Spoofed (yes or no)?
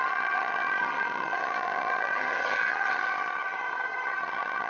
yes